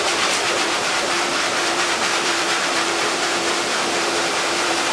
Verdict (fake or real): fake